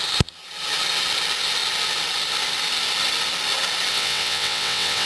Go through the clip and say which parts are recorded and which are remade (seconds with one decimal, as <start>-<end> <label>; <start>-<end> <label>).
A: 0.0-3.9 recorded; 3.9-5.1 remade